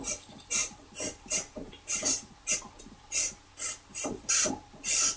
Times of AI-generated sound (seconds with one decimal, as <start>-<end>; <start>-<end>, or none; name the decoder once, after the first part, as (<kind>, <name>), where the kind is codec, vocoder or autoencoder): 0.6-2.3 (vocoder, BigVGAN v2); 3.9-4.5